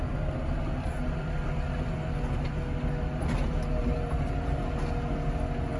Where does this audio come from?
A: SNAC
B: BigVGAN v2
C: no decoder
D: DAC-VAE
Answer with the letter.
C